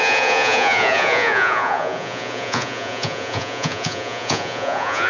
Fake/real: fake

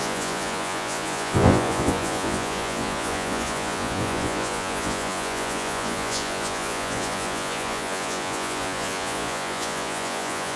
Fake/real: fake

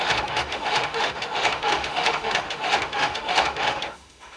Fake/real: fake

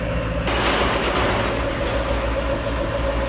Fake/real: real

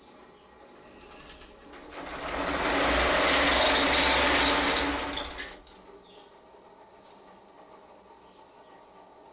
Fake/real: real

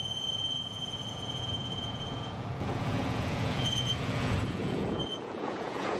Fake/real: fake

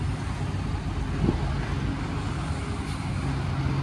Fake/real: real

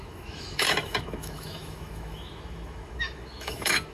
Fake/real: fake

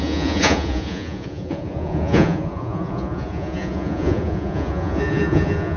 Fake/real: fake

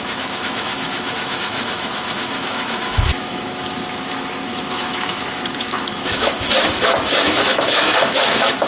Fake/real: fake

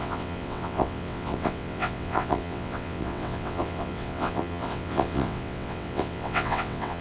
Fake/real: fake